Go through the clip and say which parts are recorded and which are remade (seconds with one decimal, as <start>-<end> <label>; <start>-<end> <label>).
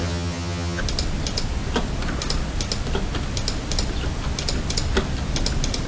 0.0-0.8 remade; 0.8-5.9 recorded